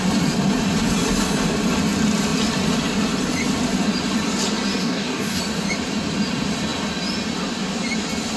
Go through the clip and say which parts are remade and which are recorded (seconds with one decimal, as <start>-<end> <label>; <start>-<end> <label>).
0.0-4.8 recorded; 4.8-5.4 remade; 5.4-8.4 recorded